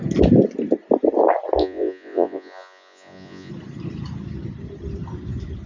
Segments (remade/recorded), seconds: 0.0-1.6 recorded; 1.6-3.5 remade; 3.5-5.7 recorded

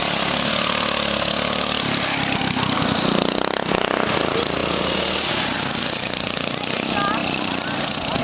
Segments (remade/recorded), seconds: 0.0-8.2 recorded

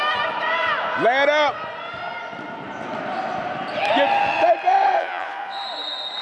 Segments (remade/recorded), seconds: 0.0-5.0 recorded; 5.0-5.6 remade; 5.6-6.2 recorded